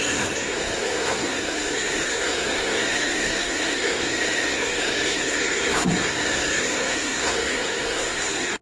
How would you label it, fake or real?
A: fake